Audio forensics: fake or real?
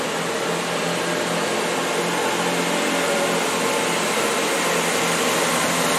real